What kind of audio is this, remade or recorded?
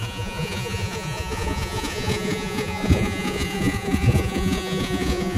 remade